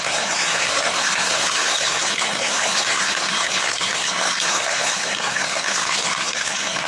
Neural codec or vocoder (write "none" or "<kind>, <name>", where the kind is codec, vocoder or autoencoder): codec, SNAC